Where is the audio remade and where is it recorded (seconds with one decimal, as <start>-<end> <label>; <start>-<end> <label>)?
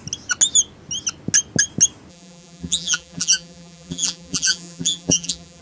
0.0-2.1 recorded; 2.1-5.6 remade